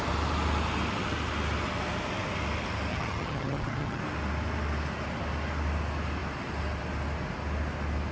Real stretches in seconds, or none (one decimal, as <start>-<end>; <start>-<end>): 0.0-2.9; 4.0-8.1